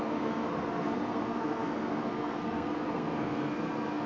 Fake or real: fake